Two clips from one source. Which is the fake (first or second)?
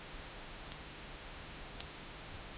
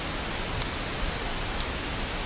first